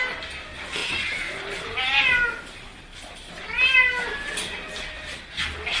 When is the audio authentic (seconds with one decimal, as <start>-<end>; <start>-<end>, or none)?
0.0-5.8